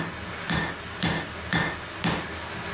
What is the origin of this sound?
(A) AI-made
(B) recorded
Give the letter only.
B